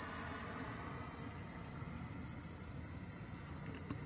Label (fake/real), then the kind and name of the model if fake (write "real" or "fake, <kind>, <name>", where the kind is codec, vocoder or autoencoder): real